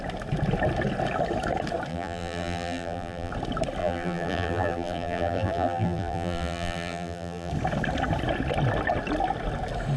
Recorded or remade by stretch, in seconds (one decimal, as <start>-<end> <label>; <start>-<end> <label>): 0.0-1.9 recorded; 1.9-3.3 remade; 3.3-3.8 recorded; 3.8-7.5 remade; 7.5-10.0 recorded